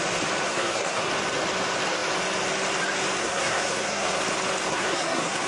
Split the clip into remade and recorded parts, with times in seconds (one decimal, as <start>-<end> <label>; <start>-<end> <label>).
0.0-0.5 recorded; 0.5-1.1 remade; 1.1-3.2 recorded; 3.2-4.2 remade; 4.2-4.7 recorded; 4.7-5.5 remade